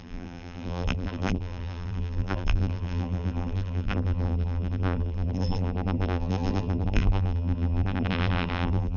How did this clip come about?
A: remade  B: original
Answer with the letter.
A